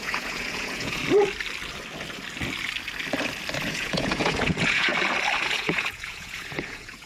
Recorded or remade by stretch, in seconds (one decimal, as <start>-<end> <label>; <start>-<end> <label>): 0.0-1.0 remade; 1.0-3.7 recorded; 3.7-4.9 remade; 4.9-5.4 recorded; 5.4-7.1 remade